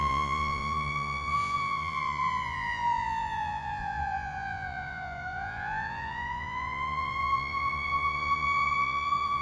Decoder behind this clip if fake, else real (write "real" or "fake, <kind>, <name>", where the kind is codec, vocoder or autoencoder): fake, vocoder, Vocos